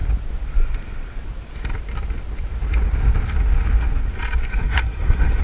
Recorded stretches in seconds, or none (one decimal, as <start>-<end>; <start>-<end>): 0.0-4.5